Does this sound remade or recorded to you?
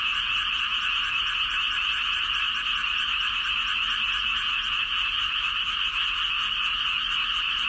recorded